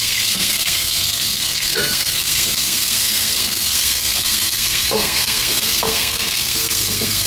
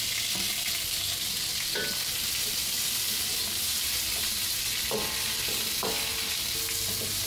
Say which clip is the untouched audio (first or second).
second